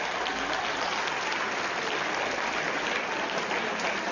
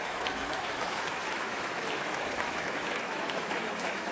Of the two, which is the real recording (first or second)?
first